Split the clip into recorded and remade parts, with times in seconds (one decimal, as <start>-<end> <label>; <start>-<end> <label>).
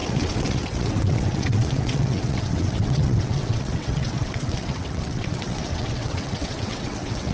0.0-7.3 remade